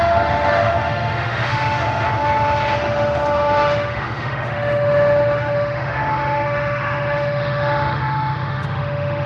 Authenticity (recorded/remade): remade